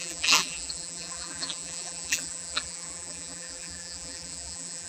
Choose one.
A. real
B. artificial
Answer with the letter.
B